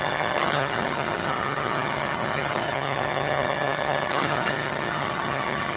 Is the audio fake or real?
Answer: fake